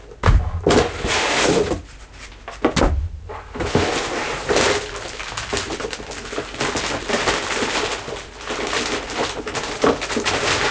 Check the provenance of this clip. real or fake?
real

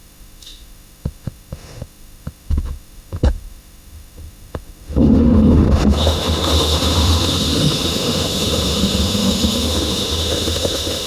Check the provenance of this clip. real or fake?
fake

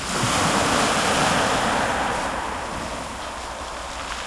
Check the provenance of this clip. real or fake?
real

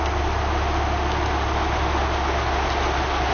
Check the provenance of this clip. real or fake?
real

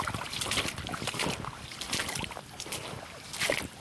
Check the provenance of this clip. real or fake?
real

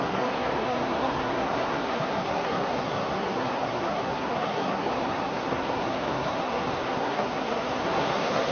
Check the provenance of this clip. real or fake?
fake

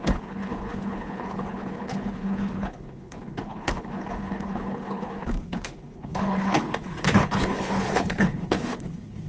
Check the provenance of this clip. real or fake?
fake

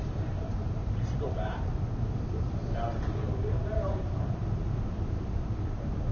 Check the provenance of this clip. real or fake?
fake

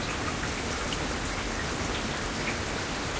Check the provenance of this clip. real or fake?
real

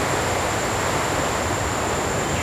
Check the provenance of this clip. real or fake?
real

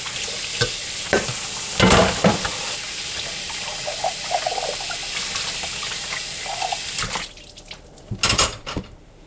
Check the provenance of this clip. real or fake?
real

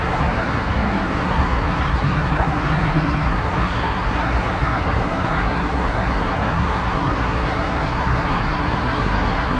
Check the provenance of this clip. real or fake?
fake